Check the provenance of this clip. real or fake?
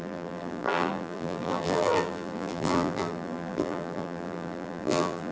fake